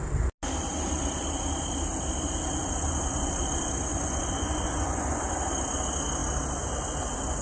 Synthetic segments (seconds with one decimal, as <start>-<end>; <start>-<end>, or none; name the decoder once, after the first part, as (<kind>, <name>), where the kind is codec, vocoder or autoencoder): 3.9-5.2 (vocoder, Vocos)